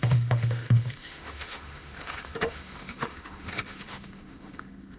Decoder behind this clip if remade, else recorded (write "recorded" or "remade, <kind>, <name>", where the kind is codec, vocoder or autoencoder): remade, autoencoder, DAC-VAE